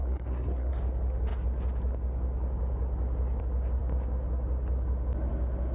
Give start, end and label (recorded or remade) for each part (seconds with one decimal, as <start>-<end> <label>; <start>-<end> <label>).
0.0-0.7 remade; 0.7-5.7 recorded